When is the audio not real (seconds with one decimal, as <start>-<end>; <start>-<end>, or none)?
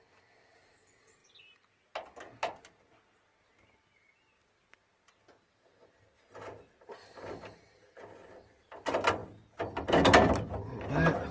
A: none